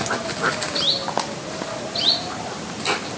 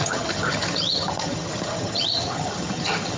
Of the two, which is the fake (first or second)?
second